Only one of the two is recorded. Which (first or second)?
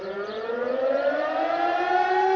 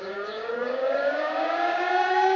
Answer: first